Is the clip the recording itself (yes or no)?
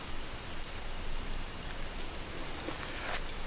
yes